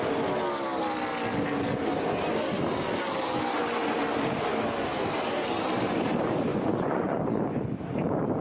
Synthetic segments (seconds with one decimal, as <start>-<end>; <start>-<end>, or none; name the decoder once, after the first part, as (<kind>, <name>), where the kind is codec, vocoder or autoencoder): 6.5-7.4 (vocoder, Vocos)